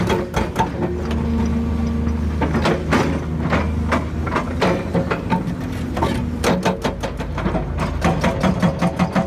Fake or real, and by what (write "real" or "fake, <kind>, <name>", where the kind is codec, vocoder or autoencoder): real